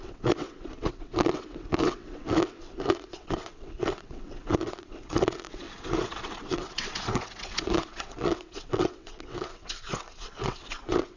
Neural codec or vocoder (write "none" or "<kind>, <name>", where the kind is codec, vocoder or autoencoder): vocoder, WaveNeXt